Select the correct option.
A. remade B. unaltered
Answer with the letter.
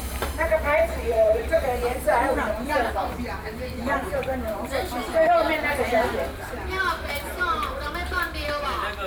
A